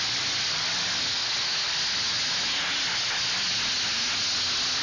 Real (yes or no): yes